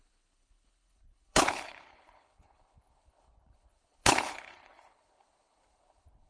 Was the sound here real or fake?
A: fake